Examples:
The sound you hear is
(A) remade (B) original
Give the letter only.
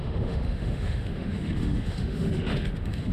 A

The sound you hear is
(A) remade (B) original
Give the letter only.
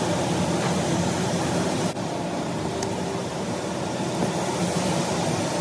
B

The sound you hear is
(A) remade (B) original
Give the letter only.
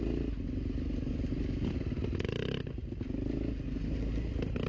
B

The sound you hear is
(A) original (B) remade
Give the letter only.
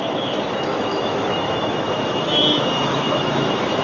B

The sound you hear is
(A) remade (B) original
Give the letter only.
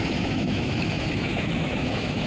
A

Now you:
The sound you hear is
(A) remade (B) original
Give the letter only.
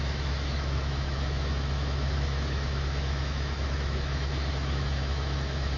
A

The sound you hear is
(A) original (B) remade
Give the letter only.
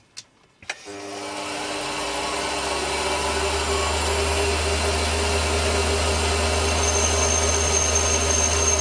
A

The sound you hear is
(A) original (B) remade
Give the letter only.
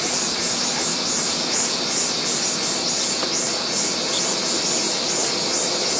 A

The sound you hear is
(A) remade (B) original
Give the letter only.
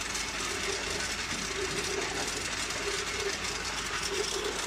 B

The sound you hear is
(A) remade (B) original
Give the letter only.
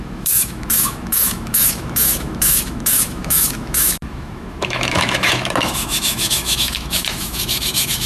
A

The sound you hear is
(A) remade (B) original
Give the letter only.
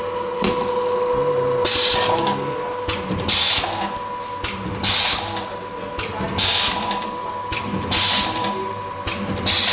B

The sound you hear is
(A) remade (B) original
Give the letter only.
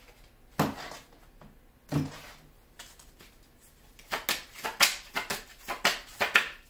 B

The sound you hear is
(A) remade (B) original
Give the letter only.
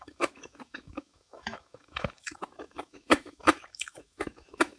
A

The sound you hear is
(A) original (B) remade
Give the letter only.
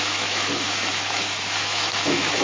B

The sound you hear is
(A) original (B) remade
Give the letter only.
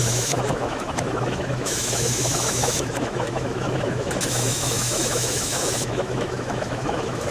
B